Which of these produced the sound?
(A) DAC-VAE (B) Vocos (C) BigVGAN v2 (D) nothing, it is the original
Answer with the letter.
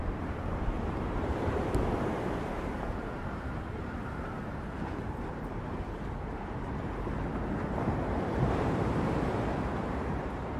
C